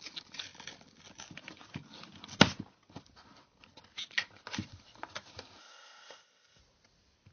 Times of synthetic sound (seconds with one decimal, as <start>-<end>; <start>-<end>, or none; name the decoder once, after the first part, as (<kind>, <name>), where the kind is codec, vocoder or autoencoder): 5.6-6.6 (codec, ZipCodec)